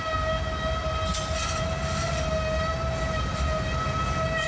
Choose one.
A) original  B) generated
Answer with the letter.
A